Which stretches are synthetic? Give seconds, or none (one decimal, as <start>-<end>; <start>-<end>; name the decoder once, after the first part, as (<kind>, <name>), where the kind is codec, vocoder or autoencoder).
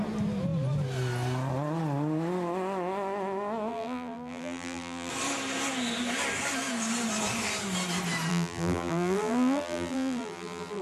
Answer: 3.7-5.1 (vocoder, BigVGAN v2); 8.3-10.8